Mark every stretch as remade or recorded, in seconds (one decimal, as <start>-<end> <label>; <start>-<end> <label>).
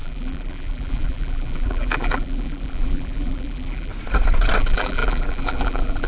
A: 0.0-3.9 remade; 3.9-4.6 recorded; 4.6-6.1 remade